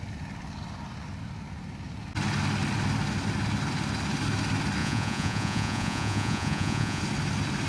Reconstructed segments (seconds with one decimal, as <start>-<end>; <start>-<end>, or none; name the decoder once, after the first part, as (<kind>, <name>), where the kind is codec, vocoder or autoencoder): 4.8-7.0 (vocoder, Vocos)